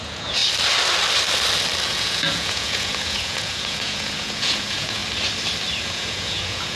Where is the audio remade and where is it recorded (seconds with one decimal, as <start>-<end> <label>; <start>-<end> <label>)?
0.0-0.4 remade; 0.4-1.9 recorded; 1.9-5.0 remade; 5.0-5.8 recorded; 5.8-6.8 remade